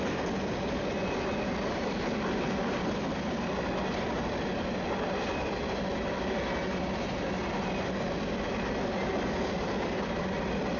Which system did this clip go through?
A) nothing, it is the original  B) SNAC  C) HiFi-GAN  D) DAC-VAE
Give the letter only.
A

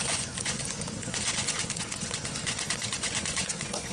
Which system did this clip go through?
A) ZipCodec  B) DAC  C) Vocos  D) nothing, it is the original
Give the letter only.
C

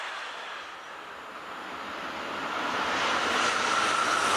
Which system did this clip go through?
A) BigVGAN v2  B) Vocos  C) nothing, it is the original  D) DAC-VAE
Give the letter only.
C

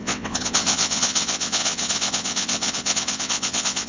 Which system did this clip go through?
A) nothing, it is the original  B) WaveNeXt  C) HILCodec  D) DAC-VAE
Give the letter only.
B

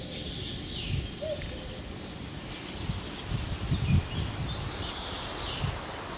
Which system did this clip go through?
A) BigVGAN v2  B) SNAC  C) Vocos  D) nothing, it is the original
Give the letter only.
D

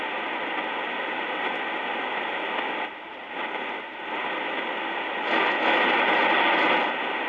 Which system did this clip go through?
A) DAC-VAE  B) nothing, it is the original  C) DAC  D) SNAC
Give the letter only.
B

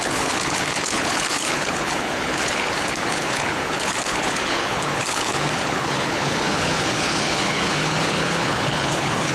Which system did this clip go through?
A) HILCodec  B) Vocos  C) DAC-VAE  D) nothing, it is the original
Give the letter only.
A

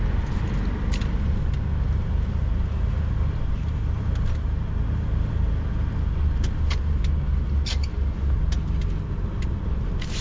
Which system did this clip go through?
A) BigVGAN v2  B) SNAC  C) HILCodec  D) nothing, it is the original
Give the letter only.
D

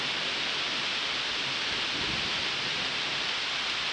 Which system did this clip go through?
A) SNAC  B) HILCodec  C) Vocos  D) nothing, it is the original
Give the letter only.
D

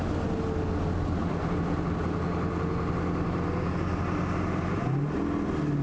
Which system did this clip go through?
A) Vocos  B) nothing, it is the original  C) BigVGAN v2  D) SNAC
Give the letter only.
B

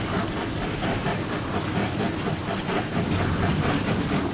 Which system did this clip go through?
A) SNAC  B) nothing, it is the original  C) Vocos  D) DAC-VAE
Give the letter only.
B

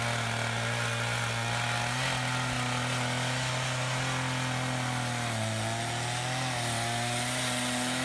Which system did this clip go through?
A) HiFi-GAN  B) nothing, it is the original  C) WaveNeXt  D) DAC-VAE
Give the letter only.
B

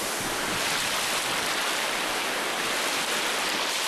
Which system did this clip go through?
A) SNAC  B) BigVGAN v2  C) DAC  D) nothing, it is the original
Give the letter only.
D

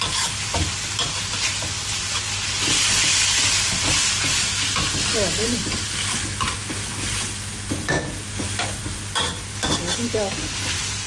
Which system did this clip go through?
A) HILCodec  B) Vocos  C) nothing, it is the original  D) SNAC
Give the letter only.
C